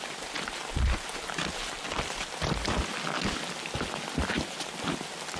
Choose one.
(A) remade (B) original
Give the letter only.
B